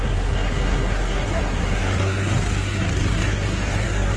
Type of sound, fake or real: fake